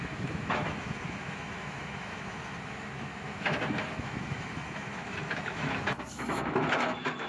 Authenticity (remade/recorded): remade